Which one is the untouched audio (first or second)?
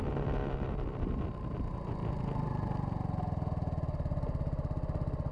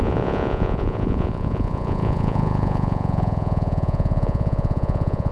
first